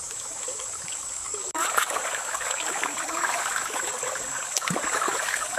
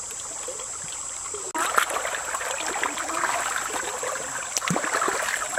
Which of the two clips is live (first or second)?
second